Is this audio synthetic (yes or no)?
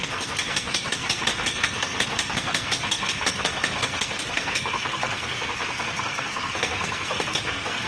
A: yes